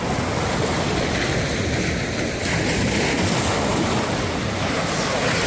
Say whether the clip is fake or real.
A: real